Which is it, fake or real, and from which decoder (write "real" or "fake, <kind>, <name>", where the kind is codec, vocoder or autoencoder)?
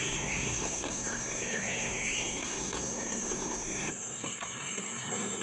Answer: fake, codec, SNAC